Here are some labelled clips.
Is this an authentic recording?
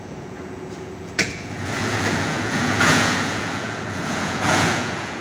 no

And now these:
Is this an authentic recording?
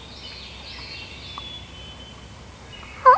yes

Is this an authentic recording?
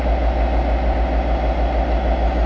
yes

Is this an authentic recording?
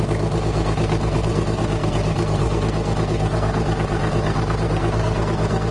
no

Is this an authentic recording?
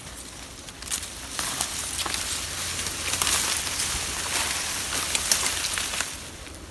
yes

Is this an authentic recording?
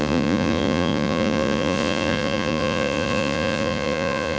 no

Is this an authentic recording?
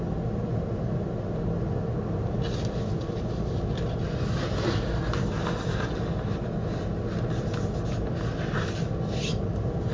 yes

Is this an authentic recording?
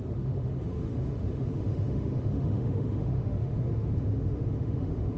no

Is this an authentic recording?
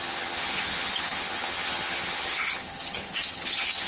no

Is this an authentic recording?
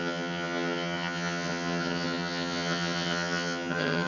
no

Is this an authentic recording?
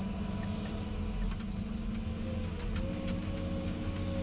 yes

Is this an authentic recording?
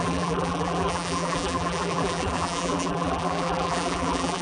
no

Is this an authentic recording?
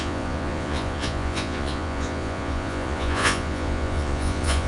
no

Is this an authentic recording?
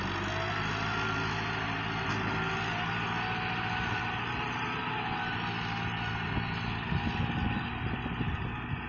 yes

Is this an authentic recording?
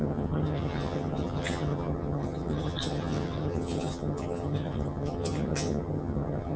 no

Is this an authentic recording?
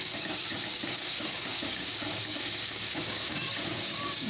no